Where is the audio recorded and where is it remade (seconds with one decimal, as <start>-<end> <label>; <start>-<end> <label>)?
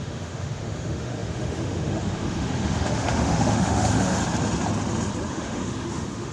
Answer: 0.0-4.2 remade; 4.2-5.3 recorded; 5.3-6.3 remade